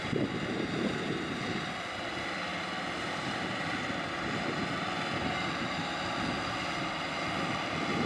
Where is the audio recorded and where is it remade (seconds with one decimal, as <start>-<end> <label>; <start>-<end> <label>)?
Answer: 0.0-8.1 recorded